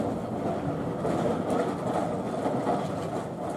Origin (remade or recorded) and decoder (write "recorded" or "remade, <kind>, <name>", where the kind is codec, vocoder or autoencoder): recorded